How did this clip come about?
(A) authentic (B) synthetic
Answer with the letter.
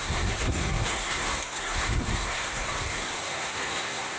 B